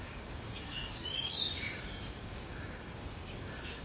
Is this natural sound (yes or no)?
no